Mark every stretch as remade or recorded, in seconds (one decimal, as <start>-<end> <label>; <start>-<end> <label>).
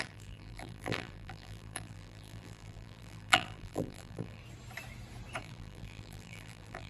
0.0-4.4 remade; 4.4-5.4 recorded; 5.4-6.9 remade